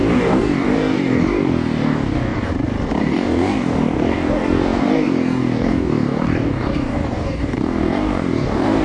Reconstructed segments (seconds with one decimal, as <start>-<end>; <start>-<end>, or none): 0.0-2.5; 3.0-8.8